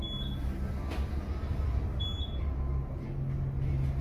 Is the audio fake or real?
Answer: real